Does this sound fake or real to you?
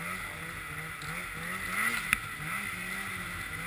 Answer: real